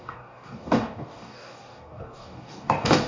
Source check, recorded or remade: remade